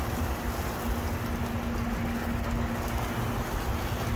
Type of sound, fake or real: real